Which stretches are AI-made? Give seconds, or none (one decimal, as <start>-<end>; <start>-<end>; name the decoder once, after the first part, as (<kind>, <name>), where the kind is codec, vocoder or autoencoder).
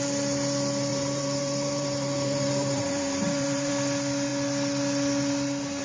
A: 0.9-3.7 (vocoder, BigVGAN v2)